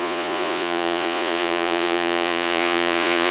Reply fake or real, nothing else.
fake